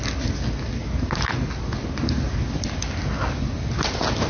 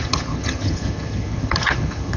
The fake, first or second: second